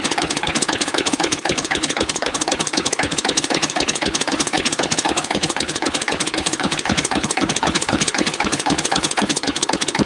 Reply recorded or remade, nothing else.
remade